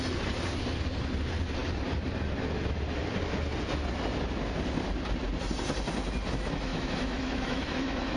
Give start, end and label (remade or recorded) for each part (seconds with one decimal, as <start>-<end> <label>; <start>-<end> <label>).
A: 0.0-6.7 recorded; 6.7-8.2 remade